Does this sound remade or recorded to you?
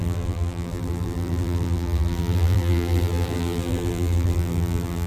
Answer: remade